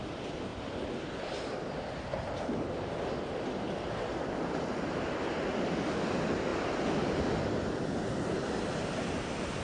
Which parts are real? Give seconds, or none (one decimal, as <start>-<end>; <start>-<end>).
0.0-9.6